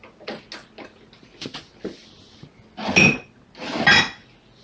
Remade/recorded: recorded